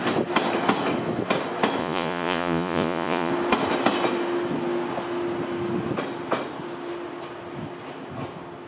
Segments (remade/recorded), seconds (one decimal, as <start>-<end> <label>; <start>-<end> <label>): 0.0-1.8 recorded; 1.8-3.3 remade; 3.3-8.7 recorded